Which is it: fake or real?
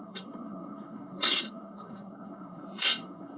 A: fake